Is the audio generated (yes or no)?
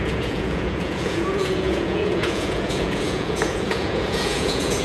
yes